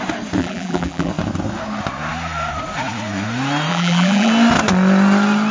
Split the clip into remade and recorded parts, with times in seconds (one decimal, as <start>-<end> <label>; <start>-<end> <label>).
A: 0.0-0.4 recorded; 0.4-1.1 remade; 1.1-3.7 recorded; 3.7-4.3 remade; 4.3-5.5 recorded